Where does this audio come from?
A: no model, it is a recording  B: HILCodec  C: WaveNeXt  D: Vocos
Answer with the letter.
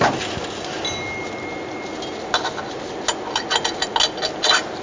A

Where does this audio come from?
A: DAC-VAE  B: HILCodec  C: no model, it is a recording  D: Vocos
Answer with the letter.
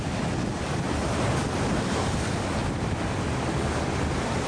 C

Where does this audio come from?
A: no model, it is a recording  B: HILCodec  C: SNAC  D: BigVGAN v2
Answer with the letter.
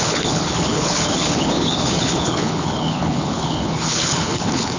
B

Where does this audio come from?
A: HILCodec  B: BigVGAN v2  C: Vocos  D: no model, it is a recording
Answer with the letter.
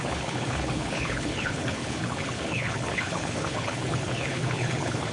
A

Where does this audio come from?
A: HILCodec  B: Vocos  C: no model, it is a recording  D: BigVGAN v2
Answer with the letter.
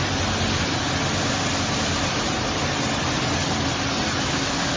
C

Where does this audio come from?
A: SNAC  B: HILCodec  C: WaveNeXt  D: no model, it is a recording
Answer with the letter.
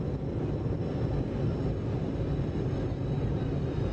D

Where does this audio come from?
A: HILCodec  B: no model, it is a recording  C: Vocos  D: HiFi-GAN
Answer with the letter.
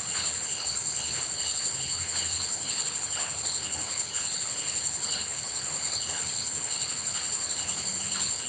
A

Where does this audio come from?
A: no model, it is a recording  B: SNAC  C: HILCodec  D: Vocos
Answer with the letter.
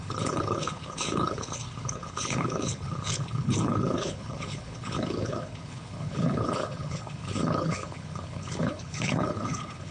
C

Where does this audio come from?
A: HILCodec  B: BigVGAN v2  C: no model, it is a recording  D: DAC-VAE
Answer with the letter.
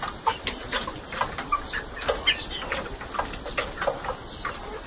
C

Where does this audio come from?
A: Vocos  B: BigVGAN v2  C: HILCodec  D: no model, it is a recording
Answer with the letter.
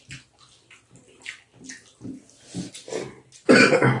D